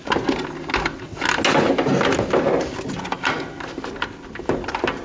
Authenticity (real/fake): real